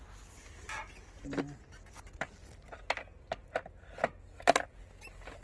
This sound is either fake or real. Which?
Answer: real